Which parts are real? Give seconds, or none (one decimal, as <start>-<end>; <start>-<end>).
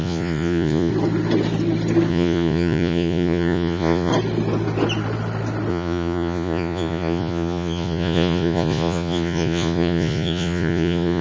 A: 0.9-2.1; 4.1-5.7